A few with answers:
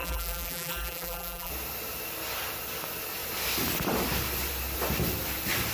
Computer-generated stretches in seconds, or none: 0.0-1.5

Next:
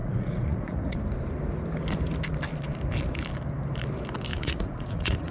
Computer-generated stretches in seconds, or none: 0.0-1.0; 4.3-5.3

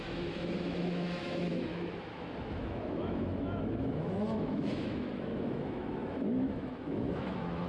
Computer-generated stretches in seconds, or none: 0.0-7.7